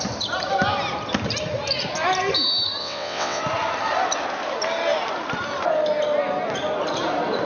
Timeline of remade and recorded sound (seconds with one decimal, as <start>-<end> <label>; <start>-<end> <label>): 0.0-2.8 recorded; 2.8-3.4 remade; 3.4-7.4 recorded